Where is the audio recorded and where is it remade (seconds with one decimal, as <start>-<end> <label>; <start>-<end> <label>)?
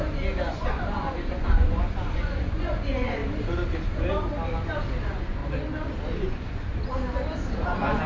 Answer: 0.0-0.5 recorded; 0.5-3.2 remade; 3.2-5.0 recorded; 5.0-5.4 remade; 5.4-6.2 recorded; 6.2-6.9 remade; 6.9-7.6 recorded; 7.6-8.1 remade